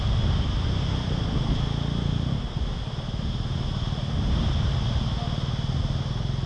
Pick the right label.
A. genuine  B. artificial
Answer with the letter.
A